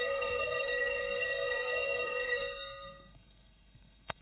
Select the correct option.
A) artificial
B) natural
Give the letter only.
A